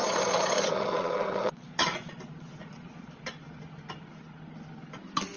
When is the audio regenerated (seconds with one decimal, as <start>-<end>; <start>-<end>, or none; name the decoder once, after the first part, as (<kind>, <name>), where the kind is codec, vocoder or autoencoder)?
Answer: 0.0-3.2 (vocoder, Vocos)